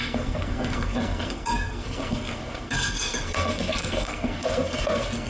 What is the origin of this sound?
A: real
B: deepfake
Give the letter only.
B